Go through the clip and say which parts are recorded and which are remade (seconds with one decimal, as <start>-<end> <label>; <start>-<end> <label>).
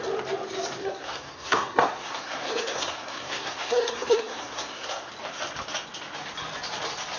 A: 0.0-0.8 recorded; 0.8-5.1 remade; 5.1-7.2 recorded